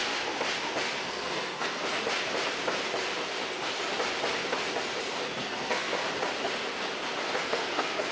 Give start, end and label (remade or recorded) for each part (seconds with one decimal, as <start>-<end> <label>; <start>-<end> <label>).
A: 0.0-1.0 recorded; 1.0-1.8 remade; 1.8-5.4 recorded; 5.4-6.0 remade; 6.0-7.4 recorded; 7.4-8.1 remade